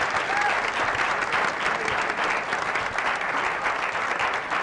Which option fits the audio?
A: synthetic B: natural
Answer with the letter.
B